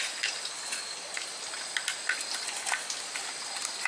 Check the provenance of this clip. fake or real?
real